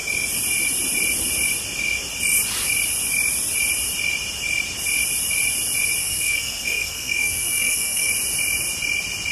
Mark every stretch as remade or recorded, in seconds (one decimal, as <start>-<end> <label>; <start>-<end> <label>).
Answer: 0.0-6.0 recorded; 6.0-8.1 remade; 8.1-9.3 recorded